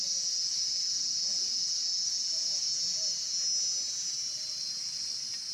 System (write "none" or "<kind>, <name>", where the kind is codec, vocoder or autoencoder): none